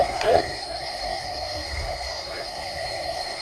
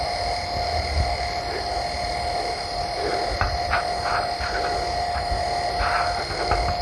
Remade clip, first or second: first